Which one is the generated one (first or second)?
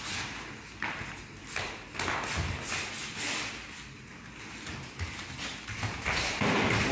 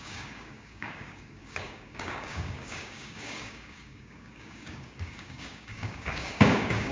second